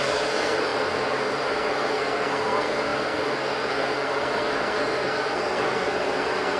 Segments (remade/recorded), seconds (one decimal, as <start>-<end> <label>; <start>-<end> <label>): 0.0-6.6 remade